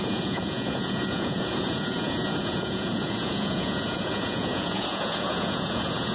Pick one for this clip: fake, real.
fake